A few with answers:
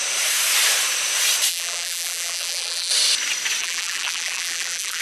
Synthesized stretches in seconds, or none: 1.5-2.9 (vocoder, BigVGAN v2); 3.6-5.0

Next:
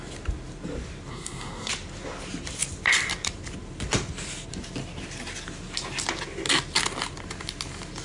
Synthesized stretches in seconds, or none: 1.1-1.7 (codec, SNAC)